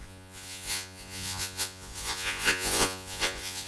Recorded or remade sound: remade